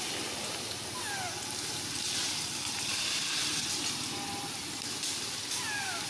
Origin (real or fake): real